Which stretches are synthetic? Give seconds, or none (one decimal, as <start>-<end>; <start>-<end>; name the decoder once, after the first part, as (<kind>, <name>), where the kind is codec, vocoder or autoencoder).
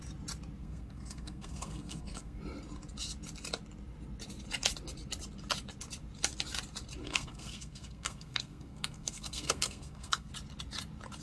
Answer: 0.6-2.4 (codec, SNAC); 7.0-10.3